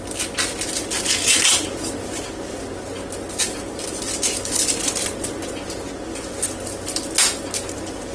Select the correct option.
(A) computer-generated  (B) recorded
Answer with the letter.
B